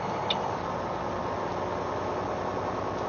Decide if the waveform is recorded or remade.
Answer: recorded